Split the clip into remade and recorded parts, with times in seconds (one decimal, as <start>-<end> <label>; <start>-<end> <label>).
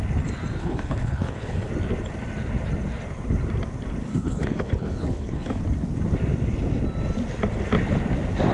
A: 0.0-0.6 recorded; 0.6-1.7 remade; 1.7-4.0 recorded; 4.0-5.6 remade; 5.6-8.5 recorded